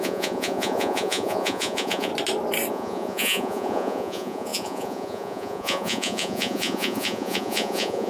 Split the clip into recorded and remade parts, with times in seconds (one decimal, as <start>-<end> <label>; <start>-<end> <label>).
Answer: 0.0-2.1 remade; 2.1-2.7 recorded; 2.7-8.1 remade